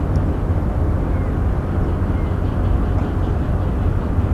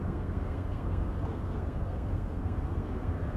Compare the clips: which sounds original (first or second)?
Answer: first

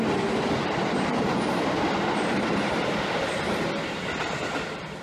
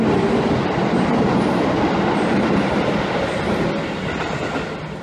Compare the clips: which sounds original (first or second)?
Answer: second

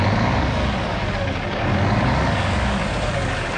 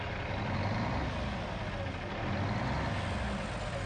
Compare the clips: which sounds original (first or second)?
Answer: second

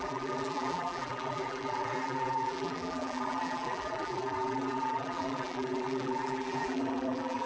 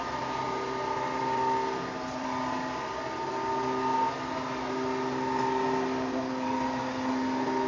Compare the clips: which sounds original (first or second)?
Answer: second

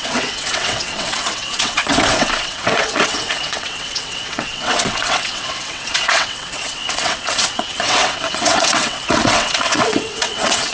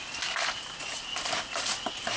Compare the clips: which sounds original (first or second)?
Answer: second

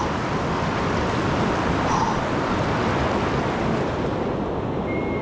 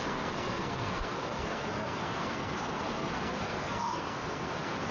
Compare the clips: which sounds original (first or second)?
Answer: first